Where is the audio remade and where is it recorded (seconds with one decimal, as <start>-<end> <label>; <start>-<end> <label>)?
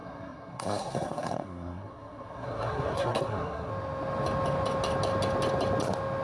0.0-3.7 remade; 3.7-6.2 recorded